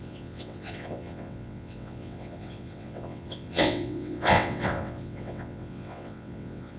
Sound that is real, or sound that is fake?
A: fake